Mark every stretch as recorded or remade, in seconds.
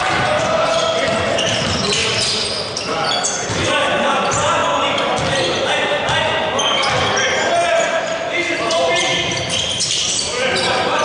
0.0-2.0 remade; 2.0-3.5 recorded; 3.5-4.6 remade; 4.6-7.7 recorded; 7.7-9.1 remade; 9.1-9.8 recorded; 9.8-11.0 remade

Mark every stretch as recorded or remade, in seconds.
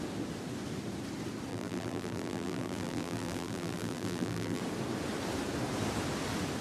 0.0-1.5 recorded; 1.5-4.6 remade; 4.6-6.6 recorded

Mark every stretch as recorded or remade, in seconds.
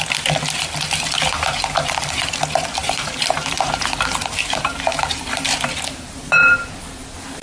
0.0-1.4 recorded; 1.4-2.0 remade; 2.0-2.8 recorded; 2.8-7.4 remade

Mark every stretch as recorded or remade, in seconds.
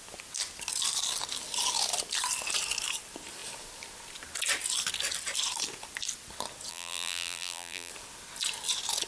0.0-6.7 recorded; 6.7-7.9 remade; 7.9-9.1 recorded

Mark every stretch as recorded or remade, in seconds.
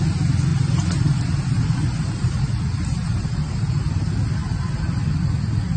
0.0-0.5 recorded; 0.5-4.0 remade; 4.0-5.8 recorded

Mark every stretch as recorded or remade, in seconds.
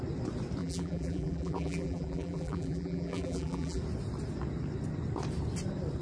0.0-0.6 recorded; 0.6-3.8 remade; 3.8-6.0 recorded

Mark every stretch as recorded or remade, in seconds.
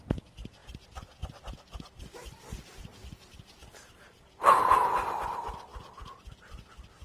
0.0-3.6 recorded; 3.6-4.6 remade; 4.6-7.0 recorded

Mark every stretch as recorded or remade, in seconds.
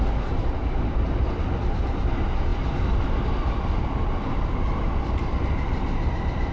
0.0-6.5 remade